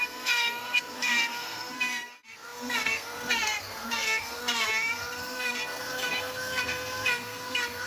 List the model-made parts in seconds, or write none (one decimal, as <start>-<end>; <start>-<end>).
0.0-7.9